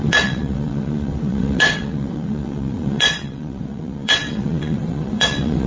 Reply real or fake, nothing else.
fake